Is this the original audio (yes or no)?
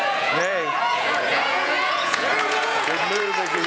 no